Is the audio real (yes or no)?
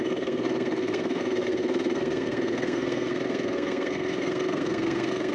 no